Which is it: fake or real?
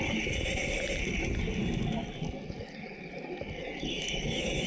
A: real